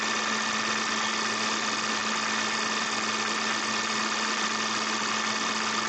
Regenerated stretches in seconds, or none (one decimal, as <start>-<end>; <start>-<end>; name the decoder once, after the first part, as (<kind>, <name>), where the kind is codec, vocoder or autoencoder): none